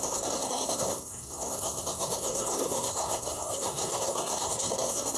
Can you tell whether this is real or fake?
fake